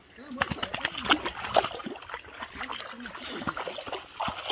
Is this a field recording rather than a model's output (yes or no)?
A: yes